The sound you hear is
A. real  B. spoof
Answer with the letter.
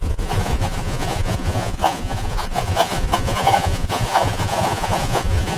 B